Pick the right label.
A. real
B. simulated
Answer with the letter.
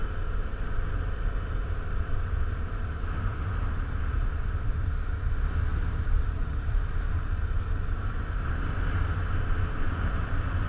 A